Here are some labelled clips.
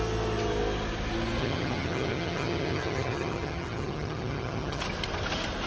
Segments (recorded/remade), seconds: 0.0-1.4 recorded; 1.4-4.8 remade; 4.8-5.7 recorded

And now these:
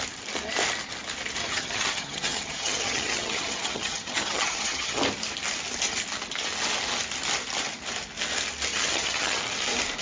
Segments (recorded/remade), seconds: 0.0-1.4 recorded; 1.4-5.0 remade; 5.0-8.7 recorded; 8.7-9.4 remade; 9.4-10.0 recorded

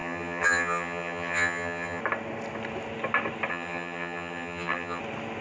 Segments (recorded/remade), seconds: 0.0-2.0 remade; 2.0-3.5 recorded; 3.5-5.0 remade; 5.0-5.4 recorded

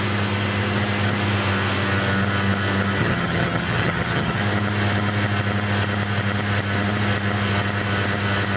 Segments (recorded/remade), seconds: 0.0-3.0 recorded; 3.0-4.4 remade; 4.4-8.6 recorded

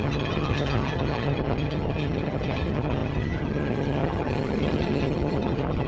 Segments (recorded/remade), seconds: 0.0-5.9 remade

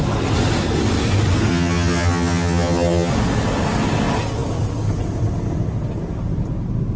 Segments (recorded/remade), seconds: 0.0-1.5 recorded; 1.5-3.1 remade; 3.1-7.0 recorded